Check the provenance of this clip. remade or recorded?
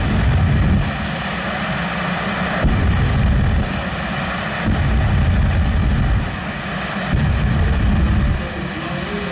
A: recorded